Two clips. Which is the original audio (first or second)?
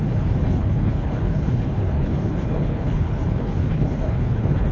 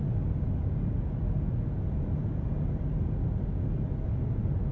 second